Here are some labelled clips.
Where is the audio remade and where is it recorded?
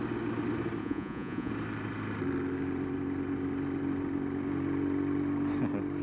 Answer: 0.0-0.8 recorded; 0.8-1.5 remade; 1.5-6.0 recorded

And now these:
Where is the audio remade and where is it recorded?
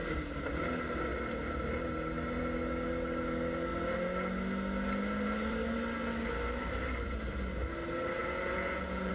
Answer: 0.0-8.2 recorded; 8.2-9.1 remade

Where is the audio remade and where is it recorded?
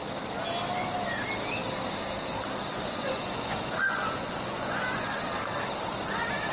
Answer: 0.0-2.7 recorded; 2.7-5.2 remade; 5.2-6.5 recorded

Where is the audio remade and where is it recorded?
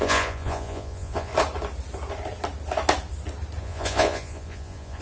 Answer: 0.0-1.3 remade; 1.3-3.6 recorded; 3.6-5.0 remade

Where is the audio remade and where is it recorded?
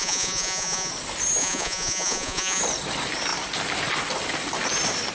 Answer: 0.0-0.9 remade; 0.9-1.4 recorded; 1.4-2.6 remade; 2.6-5.1 recorded